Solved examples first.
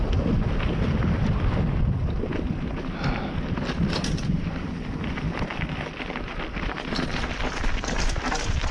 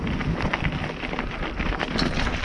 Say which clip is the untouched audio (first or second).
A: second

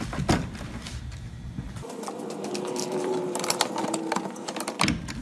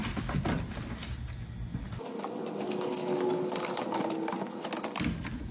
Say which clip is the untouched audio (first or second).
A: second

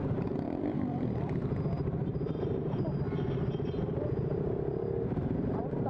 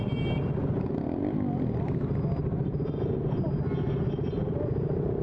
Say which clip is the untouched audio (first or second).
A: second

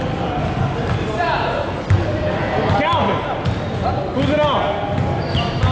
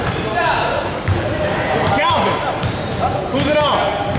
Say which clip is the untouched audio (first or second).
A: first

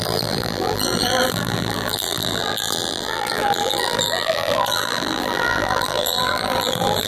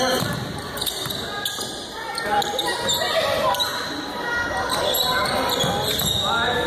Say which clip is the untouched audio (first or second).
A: second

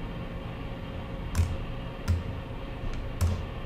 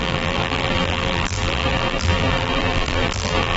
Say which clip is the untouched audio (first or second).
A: first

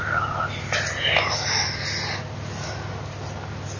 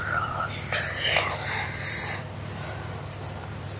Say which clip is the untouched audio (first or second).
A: first